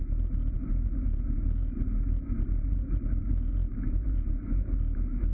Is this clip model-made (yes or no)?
no